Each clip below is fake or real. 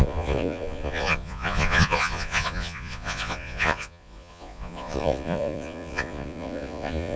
fake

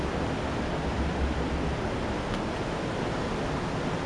real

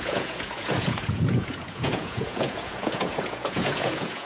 fake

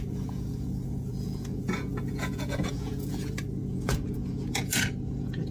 fake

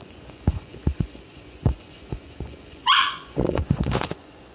fake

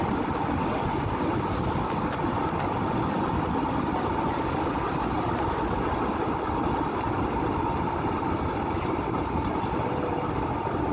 real